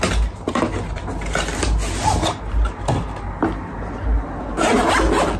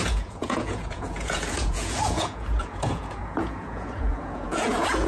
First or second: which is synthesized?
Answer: second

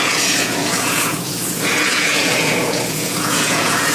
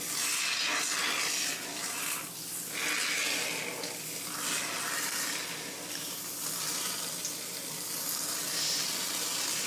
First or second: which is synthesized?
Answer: first